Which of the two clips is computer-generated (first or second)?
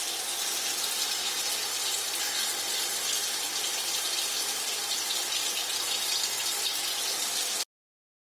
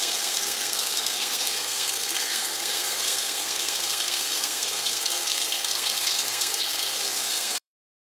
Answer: second